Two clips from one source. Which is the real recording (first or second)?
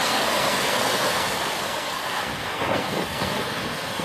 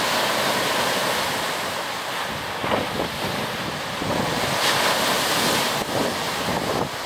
second